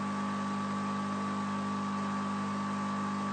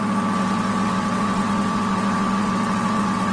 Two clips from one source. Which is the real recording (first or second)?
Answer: first